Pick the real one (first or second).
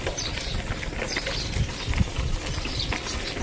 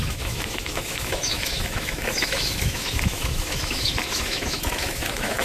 first